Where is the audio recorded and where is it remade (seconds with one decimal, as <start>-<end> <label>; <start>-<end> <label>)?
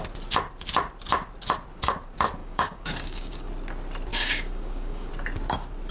0.0-2.4 recorded; 2.4-3.5 remade; 3.5-4.1 recorded; 4.1-5.1 remade; 5.1-5.9 recorded